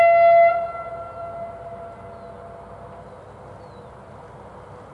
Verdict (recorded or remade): recorded